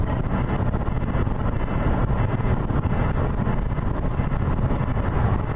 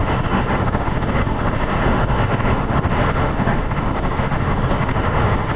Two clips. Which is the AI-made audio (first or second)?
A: second